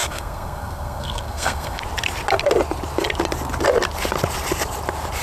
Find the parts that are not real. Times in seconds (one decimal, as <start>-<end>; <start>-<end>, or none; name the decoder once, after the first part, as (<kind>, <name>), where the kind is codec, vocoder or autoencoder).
0.0-1.8 (codec, SNAC)